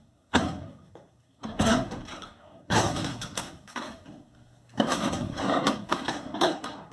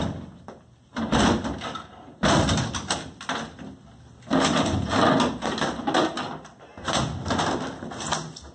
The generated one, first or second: first